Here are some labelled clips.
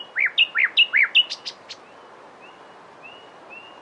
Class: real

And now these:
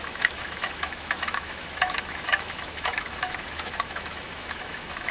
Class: fake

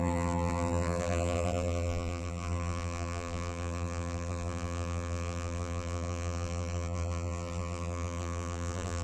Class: fake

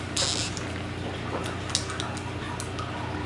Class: real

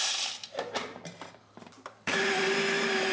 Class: fake